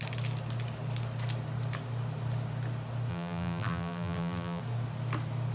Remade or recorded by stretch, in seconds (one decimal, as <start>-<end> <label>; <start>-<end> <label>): 0.0-3.1 recorded; 3.1-4.6 remade; 4.6-5.5 recorded